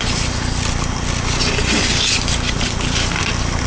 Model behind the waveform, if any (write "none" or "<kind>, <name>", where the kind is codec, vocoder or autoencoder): none